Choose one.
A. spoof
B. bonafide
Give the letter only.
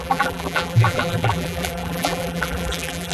A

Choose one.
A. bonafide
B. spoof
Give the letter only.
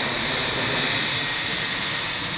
B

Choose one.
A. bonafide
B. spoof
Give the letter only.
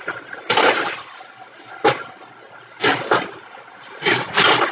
B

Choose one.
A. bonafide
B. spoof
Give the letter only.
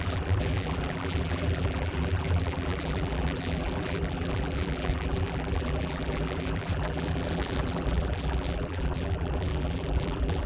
B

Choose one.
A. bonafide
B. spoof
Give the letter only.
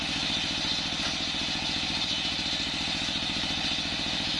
A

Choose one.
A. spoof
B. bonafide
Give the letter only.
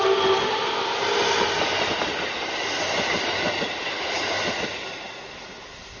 A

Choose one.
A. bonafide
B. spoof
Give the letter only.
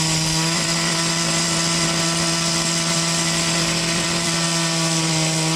B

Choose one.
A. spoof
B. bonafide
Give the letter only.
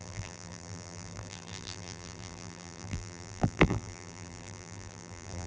A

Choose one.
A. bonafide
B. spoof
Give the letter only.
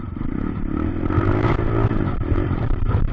B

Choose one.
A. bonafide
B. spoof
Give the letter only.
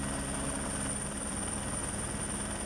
A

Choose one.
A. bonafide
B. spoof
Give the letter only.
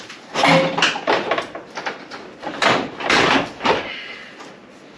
A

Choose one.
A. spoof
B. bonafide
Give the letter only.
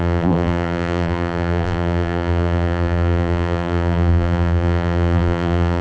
A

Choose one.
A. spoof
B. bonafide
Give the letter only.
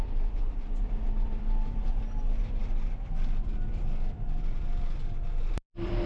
A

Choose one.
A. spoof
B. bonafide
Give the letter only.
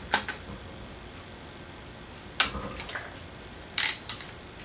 B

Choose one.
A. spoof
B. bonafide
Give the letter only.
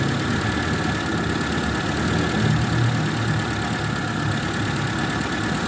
B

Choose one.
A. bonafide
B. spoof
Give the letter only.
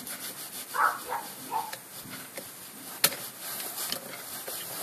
A